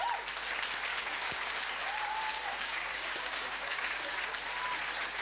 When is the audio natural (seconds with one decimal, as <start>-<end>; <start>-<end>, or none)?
0.0-0.9; 1.5-2.3; 4.1-5.2